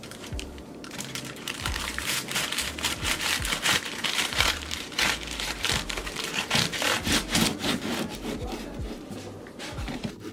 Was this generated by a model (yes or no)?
yes